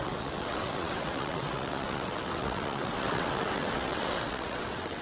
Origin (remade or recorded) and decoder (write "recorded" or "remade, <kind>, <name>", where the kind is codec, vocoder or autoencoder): remade, vocoder, WaveNeXt